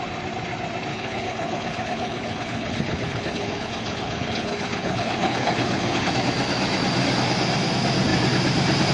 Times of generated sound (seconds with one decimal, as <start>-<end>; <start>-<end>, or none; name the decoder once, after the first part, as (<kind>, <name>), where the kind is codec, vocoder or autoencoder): 0.9-6.1 (codec, HILCodec)